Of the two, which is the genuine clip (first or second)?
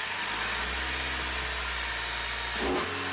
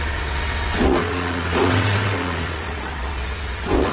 first